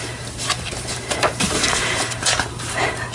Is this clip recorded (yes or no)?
no